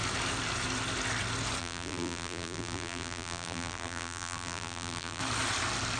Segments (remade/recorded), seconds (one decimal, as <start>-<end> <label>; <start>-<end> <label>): 0.0-1.6 recorded; 1.6-5.2 remade; 5.2-6.0 recorded